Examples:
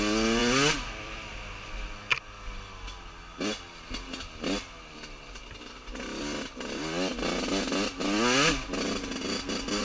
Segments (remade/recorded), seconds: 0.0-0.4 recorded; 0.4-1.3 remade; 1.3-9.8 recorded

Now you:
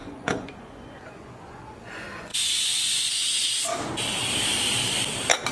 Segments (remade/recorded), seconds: 0.0-3.4 remade; 3.4-5.5 recorded

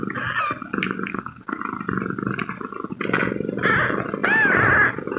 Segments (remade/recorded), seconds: 0.0-1.1 recorded; 1.1-1.6 remade; 1.6-5.2 recorded

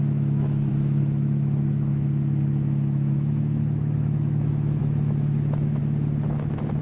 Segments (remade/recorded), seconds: 0.0-5.8 remade; 5.8-6.8 recorded

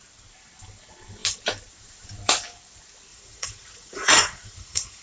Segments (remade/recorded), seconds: 0.0-3.1 recorded; 3.1-5.0 remade

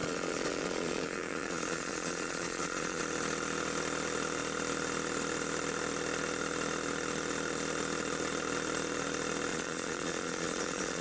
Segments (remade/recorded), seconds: 0.0-3.0 remade; 3.0-9.5 recorded; 9.5-11.0 remade